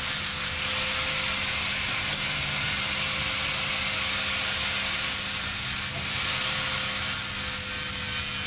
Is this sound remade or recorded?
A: recorded